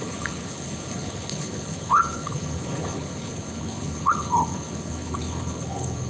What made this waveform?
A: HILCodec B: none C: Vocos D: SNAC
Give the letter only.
A